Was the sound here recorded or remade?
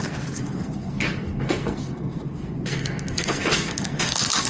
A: remade